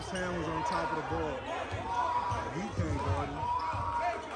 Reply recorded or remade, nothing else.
recorded